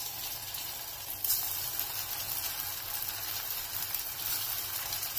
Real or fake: real